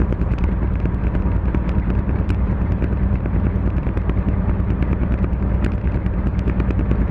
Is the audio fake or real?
fake